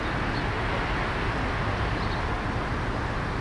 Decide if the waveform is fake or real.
real